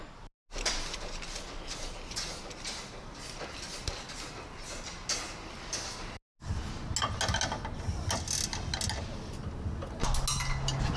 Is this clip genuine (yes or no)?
yes